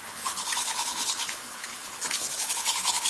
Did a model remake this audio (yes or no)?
yes